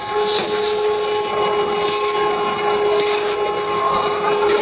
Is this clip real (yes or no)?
yes